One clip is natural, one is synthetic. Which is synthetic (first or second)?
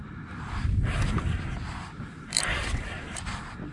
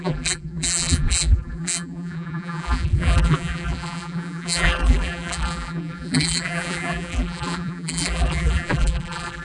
second